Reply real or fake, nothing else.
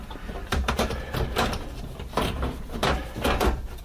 fake